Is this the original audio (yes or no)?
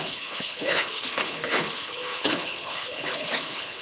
no